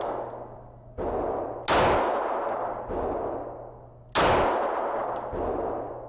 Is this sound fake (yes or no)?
no